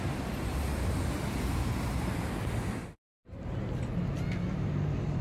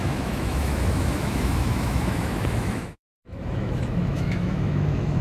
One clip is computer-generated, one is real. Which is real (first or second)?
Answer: first